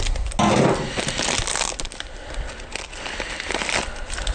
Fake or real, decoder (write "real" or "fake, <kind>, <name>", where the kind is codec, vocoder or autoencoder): real